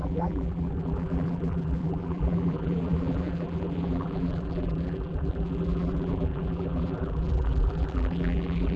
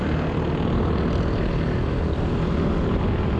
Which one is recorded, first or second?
second